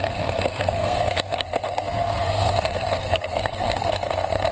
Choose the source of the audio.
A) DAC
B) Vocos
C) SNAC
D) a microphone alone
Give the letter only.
C